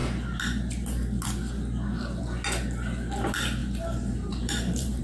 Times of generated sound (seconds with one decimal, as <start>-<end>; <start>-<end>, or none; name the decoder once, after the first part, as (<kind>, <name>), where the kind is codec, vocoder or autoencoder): 3.6-5.0 (vocoder, BigVGAN v2)

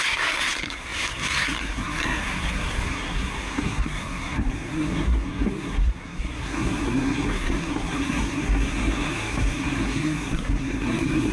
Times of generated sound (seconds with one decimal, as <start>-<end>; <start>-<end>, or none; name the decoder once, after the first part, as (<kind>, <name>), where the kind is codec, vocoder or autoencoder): 0.0-11.3 (codec, SNAC)

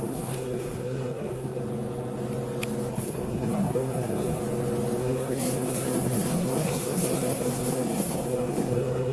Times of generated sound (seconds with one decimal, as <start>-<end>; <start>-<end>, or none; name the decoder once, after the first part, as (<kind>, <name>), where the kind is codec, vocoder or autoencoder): 0.0-1.6 (codec, SNAC); 2.9-4.4; 5.0-9.1

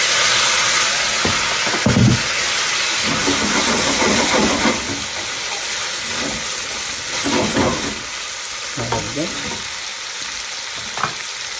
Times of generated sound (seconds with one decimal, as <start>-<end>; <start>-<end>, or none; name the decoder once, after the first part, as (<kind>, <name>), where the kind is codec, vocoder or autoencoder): none

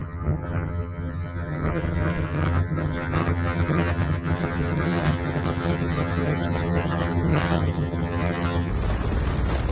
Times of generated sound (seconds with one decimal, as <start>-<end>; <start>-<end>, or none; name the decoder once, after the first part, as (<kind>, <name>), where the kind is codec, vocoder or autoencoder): 0.0-8.7 (vocoder, HiFi-GAN)